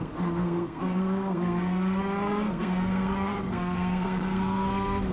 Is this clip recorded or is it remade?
remade